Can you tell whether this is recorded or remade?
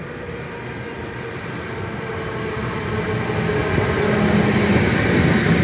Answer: recorded